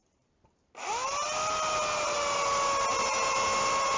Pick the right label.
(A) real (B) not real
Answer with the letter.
A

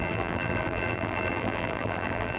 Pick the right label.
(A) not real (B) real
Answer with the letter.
A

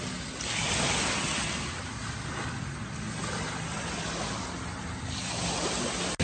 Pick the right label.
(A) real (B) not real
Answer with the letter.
A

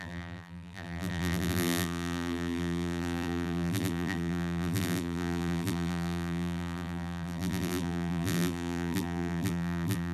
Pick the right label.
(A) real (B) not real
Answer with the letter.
B